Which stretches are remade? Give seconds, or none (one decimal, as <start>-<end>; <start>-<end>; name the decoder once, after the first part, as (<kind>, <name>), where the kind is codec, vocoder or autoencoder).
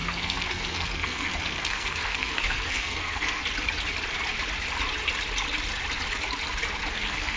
0.0-3.4 (codec, SNAC); 6.9-7.4